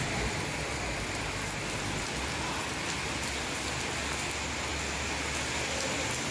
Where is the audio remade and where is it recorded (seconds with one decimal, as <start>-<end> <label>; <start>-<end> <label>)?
0.0-6.3 recorded